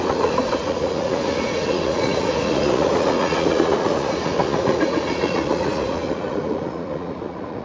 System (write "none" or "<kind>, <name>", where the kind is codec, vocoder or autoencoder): vocoder, Vocos